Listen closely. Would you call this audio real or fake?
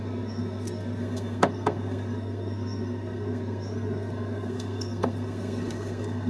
fake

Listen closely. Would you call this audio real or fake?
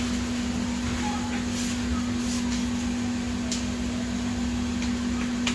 real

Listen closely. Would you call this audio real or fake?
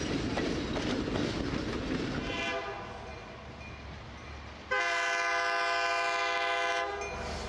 real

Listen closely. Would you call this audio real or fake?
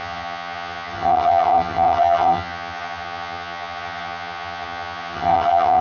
fake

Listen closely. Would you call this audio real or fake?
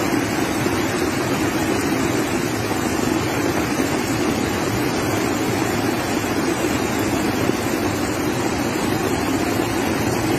real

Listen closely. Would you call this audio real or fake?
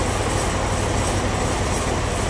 real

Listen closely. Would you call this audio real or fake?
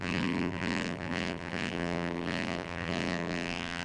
fake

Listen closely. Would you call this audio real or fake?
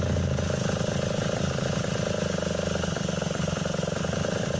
real